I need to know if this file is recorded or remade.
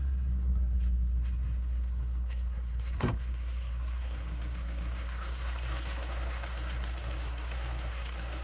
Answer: remade